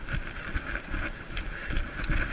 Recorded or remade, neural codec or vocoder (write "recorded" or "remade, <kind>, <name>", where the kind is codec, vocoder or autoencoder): recorded